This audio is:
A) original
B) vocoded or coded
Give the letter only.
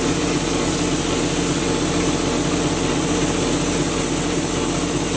A